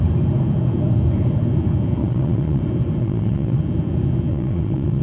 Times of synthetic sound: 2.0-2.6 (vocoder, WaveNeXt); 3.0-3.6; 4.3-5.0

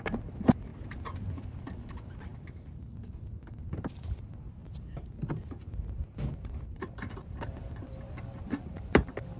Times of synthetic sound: none

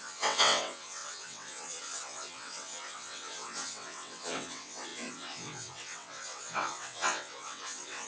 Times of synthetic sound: 0.0-8.1 (vocoder, WaveNeXt)